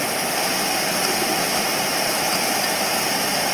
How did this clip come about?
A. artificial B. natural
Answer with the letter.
A